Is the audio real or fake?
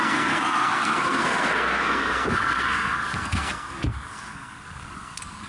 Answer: fake